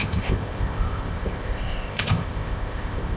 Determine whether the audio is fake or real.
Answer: fake